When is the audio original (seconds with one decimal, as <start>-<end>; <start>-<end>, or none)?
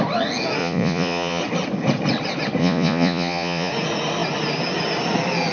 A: 0.0-0.6; 1.4-2.6; 3.7-5.5